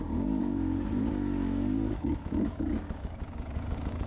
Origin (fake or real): fake